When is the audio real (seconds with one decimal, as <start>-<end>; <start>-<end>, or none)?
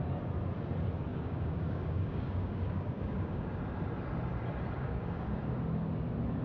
0.0-1.1; 3.6-4.8; 5.4-6.4